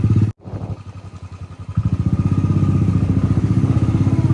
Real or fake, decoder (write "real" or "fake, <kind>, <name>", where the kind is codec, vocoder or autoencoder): real